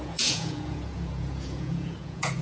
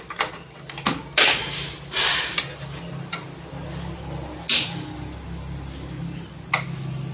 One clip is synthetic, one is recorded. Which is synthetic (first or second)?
first